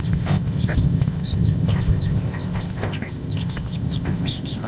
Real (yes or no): no